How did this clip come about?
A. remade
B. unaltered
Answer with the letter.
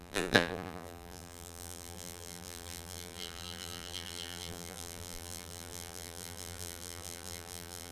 A